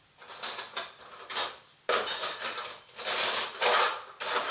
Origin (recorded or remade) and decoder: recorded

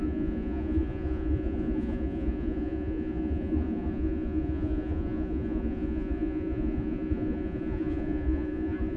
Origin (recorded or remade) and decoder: remade, vocoder, Vocos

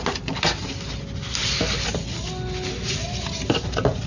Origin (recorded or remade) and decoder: recorded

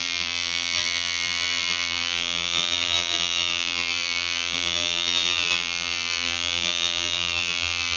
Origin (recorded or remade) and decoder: remade, vocoder, BigVGAN v2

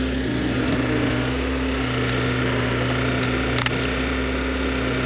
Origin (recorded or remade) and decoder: recorded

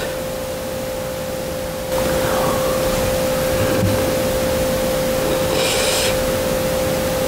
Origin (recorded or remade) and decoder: recorded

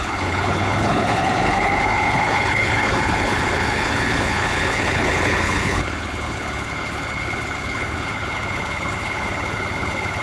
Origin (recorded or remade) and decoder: remade, codec, HILCodec